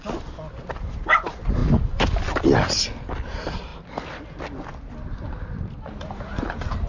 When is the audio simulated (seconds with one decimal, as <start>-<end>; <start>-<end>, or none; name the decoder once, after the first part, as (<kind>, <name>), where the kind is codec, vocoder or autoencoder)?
none